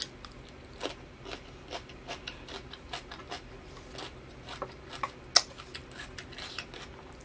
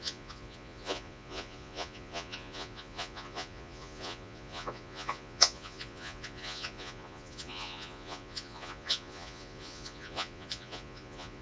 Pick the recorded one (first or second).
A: first